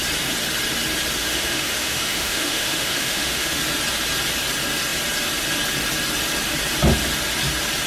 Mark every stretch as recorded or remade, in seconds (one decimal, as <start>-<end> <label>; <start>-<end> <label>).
0.0-1.2 recorded; 1.2-3.6 remade; 3.6-7.9 recorded